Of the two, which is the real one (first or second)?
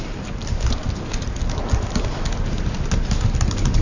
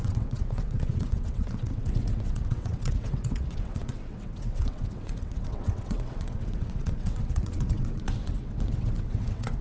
first